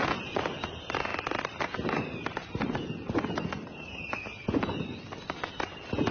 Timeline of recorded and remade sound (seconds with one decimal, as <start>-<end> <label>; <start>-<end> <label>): 0.0-6.1 recorded

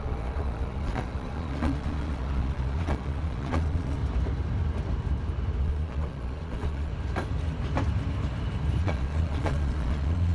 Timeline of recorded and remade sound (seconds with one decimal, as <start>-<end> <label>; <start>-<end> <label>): 0.0-4.0 remade; 4.0-5.6 recorded; 5.6-6.9 remade; 6.9-8.8 recorded; 8.8-10.3 remade